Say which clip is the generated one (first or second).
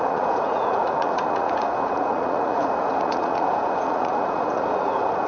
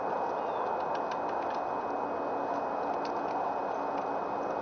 first